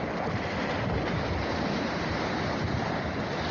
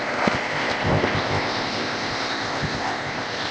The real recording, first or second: first